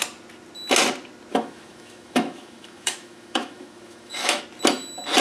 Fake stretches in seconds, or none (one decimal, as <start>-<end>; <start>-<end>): 1.3-4.4